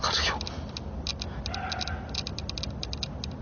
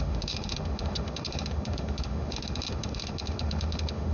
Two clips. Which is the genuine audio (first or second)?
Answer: first